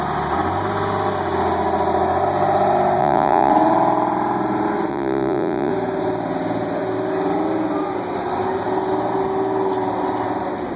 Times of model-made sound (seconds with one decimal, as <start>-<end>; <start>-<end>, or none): 3.0-3.5; 4.9-5.7